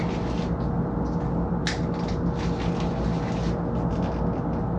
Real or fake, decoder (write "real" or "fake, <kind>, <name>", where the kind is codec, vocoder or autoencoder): real